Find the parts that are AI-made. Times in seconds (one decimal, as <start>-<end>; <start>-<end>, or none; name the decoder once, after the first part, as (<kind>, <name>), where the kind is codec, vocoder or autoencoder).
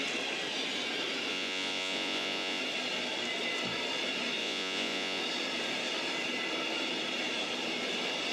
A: 1.3-2.6 (vocoder, Vocos); 4.4-5.2